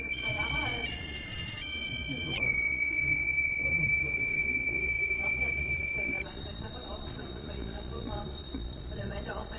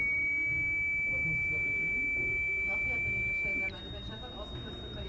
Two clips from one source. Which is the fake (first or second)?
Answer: first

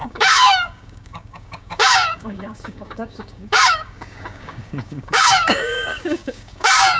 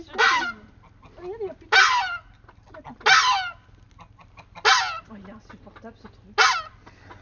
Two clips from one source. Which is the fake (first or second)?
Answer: first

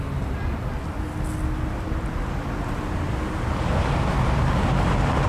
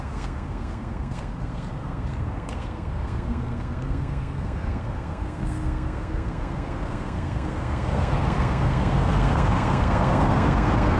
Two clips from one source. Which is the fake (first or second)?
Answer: second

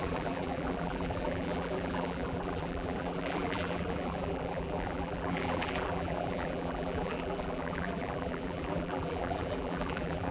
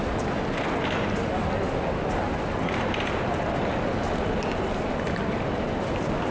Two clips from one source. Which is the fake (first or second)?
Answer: first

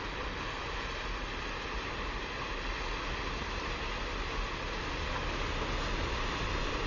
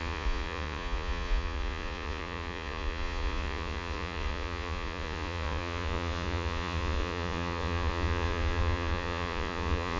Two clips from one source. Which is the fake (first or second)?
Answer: second